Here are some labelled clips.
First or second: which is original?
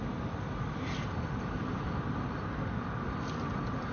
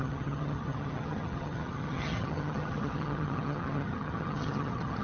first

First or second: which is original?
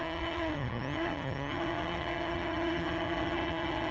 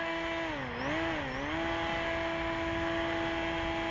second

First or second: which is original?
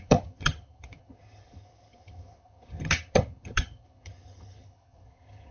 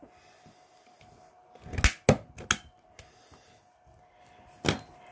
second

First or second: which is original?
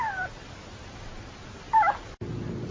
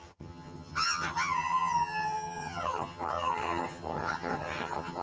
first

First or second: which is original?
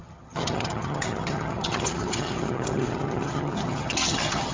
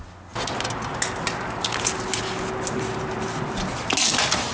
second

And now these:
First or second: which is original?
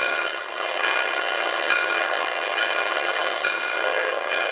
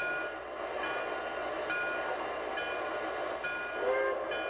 second